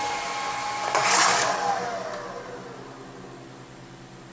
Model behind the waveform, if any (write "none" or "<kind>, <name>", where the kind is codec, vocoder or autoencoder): none